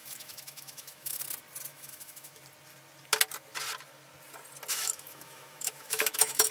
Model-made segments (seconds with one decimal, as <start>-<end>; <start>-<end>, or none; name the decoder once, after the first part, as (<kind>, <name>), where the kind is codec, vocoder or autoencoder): 0.0-1.2 (autoencoder, DAC-VAE); 1.7-2.4; 4.7-6.5